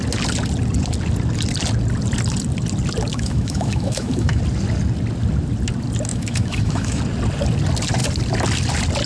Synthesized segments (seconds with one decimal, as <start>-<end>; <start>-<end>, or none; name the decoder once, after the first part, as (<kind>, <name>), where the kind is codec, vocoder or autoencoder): 3.1-4.4 (autoencoder, DAC-VAE); 6.1-7.0